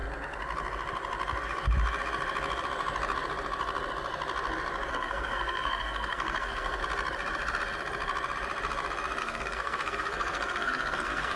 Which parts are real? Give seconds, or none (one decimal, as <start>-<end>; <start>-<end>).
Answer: 0.0-4.9; 6.8-9.2